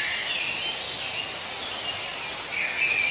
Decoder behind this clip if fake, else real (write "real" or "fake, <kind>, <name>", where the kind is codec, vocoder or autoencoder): real